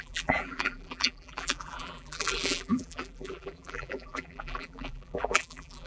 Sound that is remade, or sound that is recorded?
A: remade